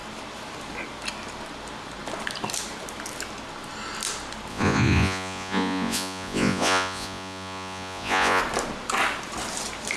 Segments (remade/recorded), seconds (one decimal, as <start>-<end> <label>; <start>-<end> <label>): 0.0-4.5 recorded; 4.5-8.4 remade; 8.4-10.0 recorded